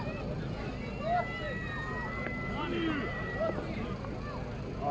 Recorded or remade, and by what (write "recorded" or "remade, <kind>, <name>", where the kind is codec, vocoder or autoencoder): recorded